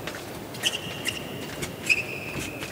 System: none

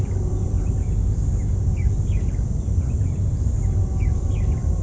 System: none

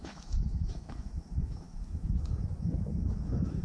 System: autoencoder, DAC-VAE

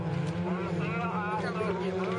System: none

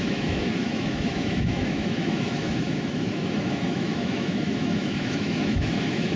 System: autoencoder, DAC-VAE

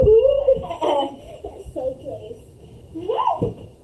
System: autoencoder, DAC-VAE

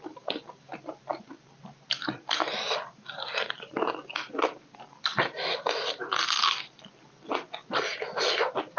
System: none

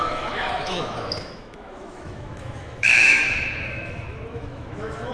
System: autoencoder, DAC-VAE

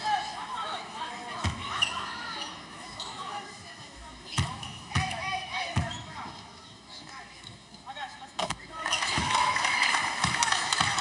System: autoencoder, DAC-VAE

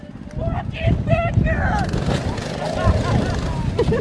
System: none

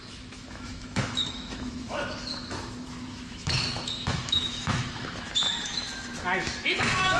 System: autoencoder, DAC-VAE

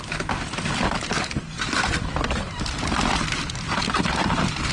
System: none